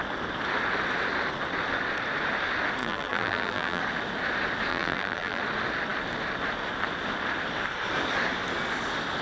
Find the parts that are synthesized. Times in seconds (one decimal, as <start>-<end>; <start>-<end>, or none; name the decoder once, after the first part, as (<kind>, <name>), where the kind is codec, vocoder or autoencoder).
2.8-3.8 (vocoder, BigVGAN v2); 4.7-5.4